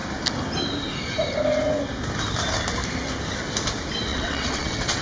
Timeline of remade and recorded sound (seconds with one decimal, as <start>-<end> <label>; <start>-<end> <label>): 0.0-4.1 recorded; 4.1-5.0 remade